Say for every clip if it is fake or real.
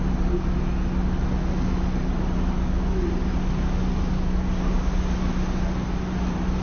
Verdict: real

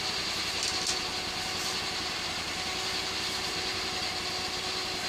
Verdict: real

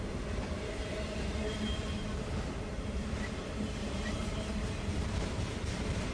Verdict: fake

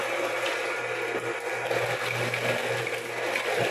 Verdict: real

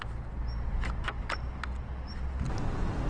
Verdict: real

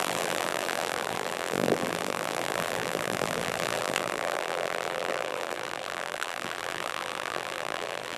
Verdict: fake